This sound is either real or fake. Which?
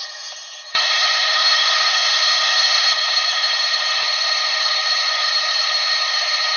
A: fake